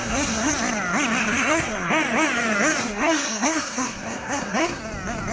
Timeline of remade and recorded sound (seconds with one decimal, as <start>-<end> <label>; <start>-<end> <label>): 0.0-0.5 remade; 0.5-1.2 recorded; 1.2-1.9 remade; 1.9-2.8 recorded; 2.8-4.8 remade; 4.8-5.3 recorded